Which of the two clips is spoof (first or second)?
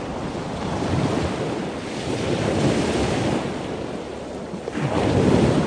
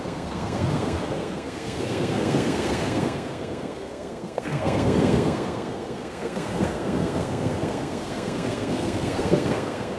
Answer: second